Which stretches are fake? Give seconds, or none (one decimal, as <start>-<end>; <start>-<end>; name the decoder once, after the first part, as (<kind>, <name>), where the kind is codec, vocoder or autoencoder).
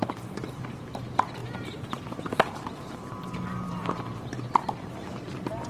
0.0-5.7 (vocoder, BigVGAN v2)